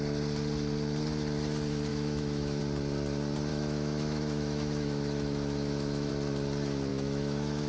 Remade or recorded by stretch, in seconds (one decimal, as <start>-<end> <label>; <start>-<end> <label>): 0.0-1.9 recorded; 1.9-2.6 remade; 2.6-3.5 recorded; 3.5-6.1 remade; 6.1-6.9 recorded; 6.9-7.7 remade